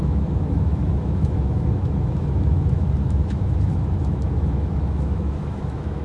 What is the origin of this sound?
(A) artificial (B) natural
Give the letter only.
A